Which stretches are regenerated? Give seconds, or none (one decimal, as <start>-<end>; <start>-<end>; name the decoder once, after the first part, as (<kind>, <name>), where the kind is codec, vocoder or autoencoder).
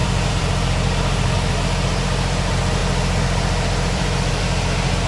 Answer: 0.0-1.3 (vocoder, BigVGAN v2); 2.8-4.4